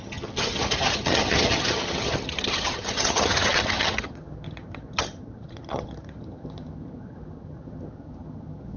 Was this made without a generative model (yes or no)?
no